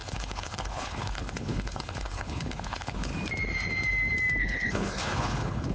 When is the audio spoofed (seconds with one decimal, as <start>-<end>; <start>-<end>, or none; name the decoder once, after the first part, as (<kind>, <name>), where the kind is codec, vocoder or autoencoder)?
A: 0.0-3.1 (codec, HILCodec); 4.4-5.7